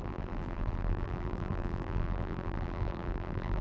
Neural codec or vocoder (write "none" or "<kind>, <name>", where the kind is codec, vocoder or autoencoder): vocoder, BigVGAN v2